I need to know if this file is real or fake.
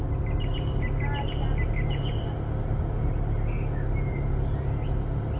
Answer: real